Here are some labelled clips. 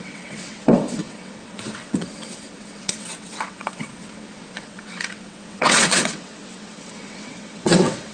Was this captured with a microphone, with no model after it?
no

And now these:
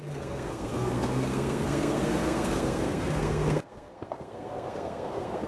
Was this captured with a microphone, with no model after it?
no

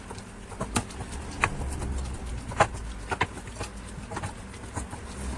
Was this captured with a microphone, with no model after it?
yes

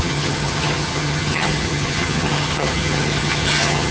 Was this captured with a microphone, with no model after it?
no